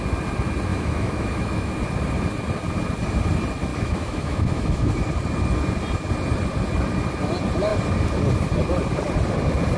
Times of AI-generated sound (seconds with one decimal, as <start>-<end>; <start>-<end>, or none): 0.7-1.7; 3.7-4.9